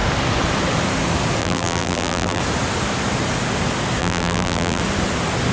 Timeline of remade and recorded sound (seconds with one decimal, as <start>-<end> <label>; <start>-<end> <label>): 0.0-1.4 recorded; 1.4-2.4 remade; 2.4-4.0 recorded; 4.0-4.8 remade; 4.8-5.5 recorded